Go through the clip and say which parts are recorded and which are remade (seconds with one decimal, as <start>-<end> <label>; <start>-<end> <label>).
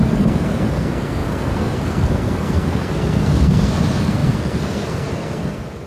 0.0-5.9 remade